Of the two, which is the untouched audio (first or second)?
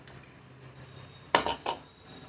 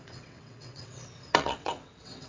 first